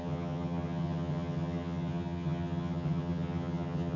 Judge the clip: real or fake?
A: fake